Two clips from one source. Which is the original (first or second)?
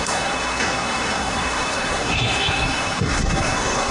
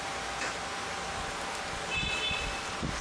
second